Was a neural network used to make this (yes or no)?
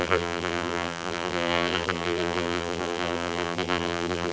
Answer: yes